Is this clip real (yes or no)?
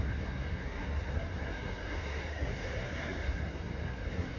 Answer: no